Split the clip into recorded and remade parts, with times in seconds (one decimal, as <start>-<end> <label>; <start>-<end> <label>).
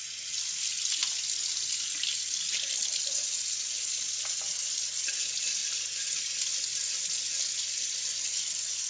0.0-8.9 recorded